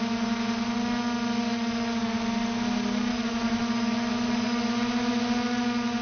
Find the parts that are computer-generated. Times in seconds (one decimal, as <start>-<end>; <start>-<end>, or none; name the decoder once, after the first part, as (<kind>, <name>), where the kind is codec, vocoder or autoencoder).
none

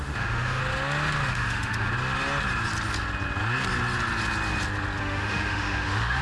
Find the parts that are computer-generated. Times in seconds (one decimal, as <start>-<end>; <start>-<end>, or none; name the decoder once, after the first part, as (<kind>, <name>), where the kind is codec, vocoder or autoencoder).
0.0-0.6 (autoencoder, DAC-VAE); 1.3-1.9; 5.0-6.2

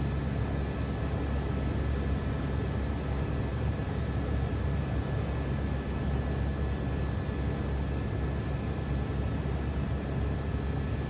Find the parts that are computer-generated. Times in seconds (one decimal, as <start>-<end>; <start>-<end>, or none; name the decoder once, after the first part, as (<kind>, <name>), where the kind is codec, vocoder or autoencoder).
3.5-4.8 (vocoder, BigVGAN v2)

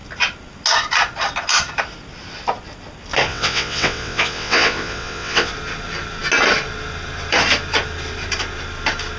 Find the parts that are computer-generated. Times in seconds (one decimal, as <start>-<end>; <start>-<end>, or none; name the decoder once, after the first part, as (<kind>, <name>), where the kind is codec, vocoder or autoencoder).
3.3-5.5 (vocoder, WaveNeXt)